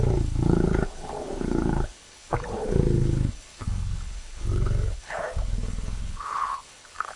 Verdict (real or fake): fake